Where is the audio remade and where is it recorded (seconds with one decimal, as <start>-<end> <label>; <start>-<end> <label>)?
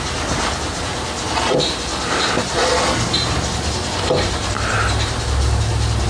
0.0-6.1 recorded